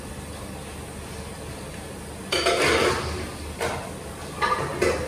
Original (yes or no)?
yes